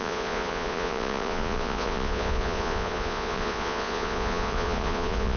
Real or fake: fake